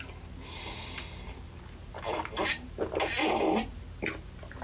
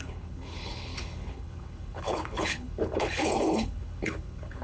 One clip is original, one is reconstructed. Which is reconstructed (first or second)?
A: second